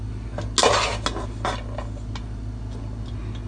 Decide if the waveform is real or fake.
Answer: real